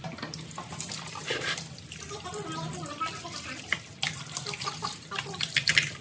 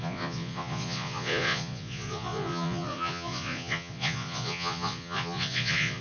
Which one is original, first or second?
first